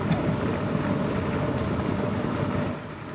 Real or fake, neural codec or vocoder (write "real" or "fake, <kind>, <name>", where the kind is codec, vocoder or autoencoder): real